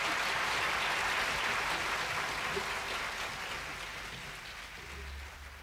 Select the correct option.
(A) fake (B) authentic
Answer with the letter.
B